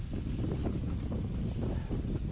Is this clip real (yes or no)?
yes